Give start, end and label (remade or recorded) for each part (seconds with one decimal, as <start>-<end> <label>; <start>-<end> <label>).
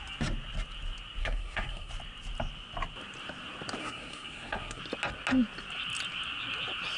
0.0-1.2 recorded; 1.2-1.9 remade; 1.9-3.8 recorded; 3.8-4.8 remade; 4.8-7.0 recorded